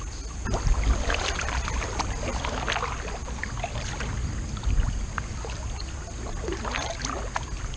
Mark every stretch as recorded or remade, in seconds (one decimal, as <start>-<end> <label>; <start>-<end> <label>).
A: 0.0-3.2 recorded; 3.2-4.1 remade; 4.1-7.8 recorded